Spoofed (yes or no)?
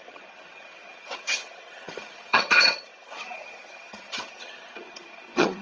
yes